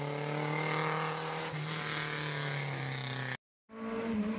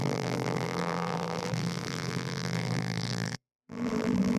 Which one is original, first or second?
first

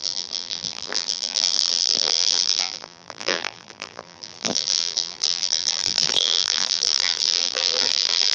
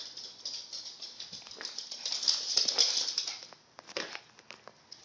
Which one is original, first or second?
second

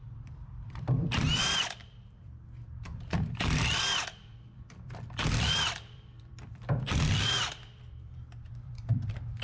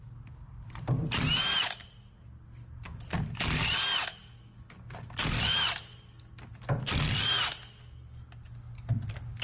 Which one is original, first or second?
second